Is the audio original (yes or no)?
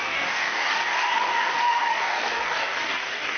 no